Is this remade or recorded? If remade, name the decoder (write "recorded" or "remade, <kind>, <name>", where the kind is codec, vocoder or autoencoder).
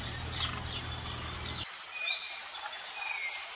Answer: recorded